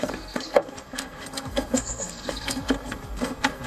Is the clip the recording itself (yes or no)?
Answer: no